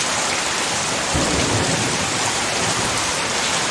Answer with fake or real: fake